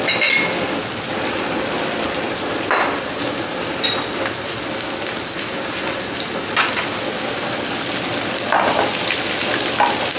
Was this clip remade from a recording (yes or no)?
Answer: no